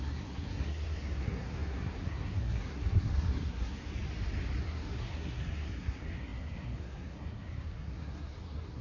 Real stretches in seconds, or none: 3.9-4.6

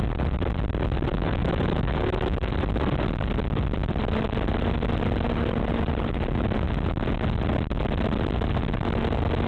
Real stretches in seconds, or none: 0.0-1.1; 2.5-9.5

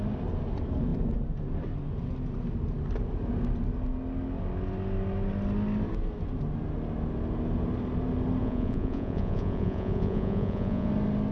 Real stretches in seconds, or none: 0.0-8.4; 10.9-11.3

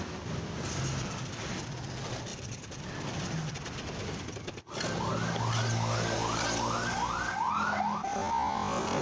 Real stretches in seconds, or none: 0.0-9.0

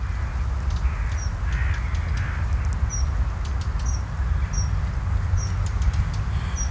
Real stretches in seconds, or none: 0.0-6.7